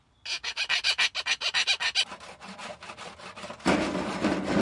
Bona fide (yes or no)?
yes